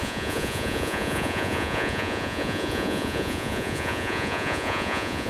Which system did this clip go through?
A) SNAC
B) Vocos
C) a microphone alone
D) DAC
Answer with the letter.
B